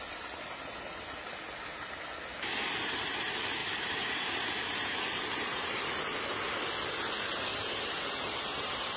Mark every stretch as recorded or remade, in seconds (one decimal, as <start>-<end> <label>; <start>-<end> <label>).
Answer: 0.0-3.6 recorded; 3.6-5.9 remade; 5.9-7.5 recorded; 7.5-9.0 remade